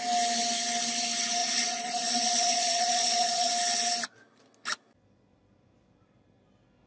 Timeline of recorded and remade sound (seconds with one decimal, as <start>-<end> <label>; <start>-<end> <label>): 0.0-1.4 recorded; 1.4-3.5 remade; 3.5-6.9 recorded